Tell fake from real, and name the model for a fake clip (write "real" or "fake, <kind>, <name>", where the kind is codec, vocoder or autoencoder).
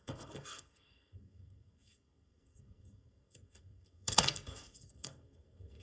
fake, codec, SNAC